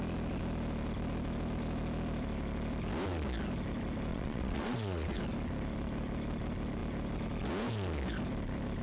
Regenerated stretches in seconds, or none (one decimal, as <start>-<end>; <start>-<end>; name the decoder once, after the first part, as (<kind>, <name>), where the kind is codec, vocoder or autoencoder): 4.1-5.2 (vocoder, WaveNeXt)